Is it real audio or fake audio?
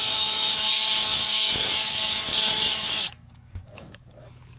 fake